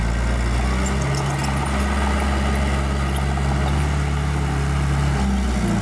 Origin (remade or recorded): recorded